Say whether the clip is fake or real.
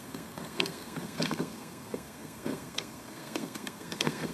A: fake